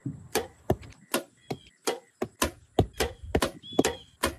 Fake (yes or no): no